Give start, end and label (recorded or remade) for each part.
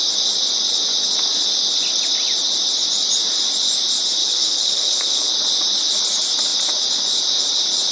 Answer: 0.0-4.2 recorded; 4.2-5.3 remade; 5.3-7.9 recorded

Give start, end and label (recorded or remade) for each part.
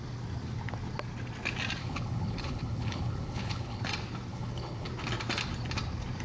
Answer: 0.0-1.8 recorded; 1.8-3.8 remade; 3.8-4.3 recorded; 4.3-4.9 remade; 4.9-6.2 recorded